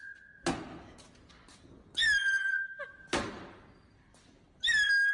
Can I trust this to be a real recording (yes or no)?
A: yes